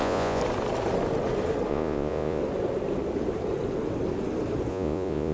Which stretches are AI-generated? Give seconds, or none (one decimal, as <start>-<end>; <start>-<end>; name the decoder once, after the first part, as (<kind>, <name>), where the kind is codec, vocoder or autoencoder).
0.0-0.4 (vocoder, Vocos); 1.7-2.4; 4.7-5.3